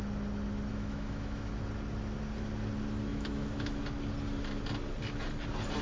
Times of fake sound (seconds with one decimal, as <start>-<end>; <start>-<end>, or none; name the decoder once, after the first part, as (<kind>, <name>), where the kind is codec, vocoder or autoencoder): 0.7-1.5 (autoencoder, DAC-VAE); 3.1-3.8